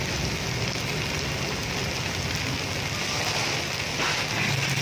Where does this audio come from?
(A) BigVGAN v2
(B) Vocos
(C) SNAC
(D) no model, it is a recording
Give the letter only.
D